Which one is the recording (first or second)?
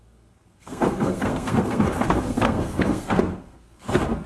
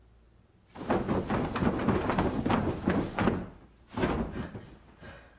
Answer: second